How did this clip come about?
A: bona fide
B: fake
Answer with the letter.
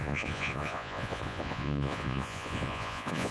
B